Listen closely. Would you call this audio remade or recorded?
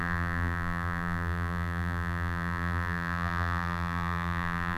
remade